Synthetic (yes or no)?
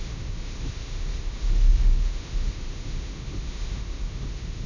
yes